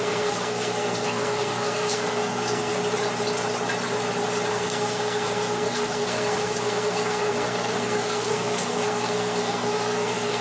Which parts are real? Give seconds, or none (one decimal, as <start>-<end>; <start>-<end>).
2.8-4.5